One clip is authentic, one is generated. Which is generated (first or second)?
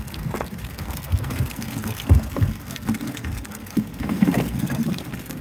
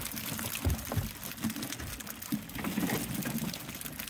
first